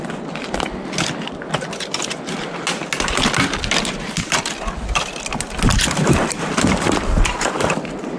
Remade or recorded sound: recorded